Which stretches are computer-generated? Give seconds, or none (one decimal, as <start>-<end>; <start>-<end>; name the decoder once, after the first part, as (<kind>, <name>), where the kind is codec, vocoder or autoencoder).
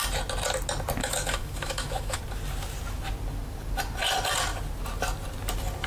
1.0-2.2 (autoencoder, DAC-VAE)